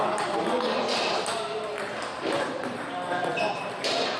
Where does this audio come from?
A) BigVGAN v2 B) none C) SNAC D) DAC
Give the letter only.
B